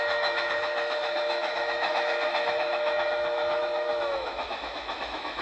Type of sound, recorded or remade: remade